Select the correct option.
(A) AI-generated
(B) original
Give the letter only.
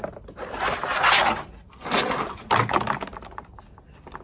B